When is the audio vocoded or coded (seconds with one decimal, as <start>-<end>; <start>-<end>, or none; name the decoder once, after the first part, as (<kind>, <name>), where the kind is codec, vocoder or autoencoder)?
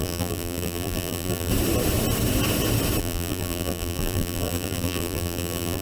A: 0.0-1.5 (vocoder, BigVGAN v2); 3.0-5.8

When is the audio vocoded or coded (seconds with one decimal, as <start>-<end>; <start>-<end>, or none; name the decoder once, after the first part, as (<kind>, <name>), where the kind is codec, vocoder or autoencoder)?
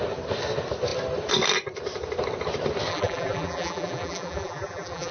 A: 2.9-5.1 (vocoder, BigVGAN v2)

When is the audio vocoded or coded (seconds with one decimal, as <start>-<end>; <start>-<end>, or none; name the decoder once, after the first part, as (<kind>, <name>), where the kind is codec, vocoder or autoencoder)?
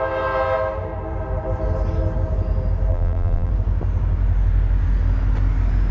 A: 2.9-3.5 (vocoder, BigVGAN v2)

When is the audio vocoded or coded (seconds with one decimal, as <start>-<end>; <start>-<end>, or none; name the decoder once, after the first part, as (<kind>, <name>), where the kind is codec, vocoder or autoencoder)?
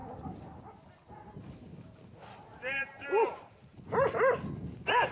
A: 2.5-4.1 (vocoder, BigVGAN v2)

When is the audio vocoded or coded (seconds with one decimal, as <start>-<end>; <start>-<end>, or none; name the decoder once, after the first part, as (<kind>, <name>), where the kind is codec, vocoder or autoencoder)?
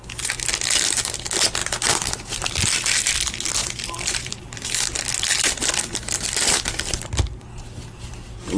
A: 3.6-8.6 (vocoder, BigVGAN v2)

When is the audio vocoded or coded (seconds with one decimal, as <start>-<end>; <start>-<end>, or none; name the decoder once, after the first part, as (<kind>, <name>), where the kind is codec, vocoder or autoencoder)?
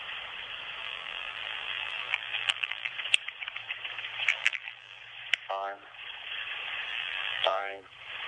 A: 0.8-2.9 (vocoder, BigVGAN v2); 4.3-5.0; 6.9-7.8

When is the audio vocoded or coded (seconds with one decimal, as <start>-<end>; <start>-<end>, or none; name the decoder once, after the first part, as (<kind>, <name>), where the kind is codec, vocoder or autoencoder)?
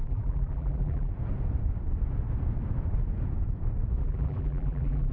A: 0.0-1.1 (vocoder, BigVGAN v2); 4.0-5.1